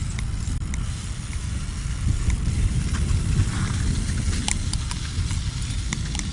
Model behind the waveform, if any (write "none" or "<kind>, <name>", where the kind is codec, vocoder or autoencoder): none